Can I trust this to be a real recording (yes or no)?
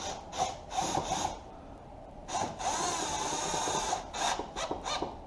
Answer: yes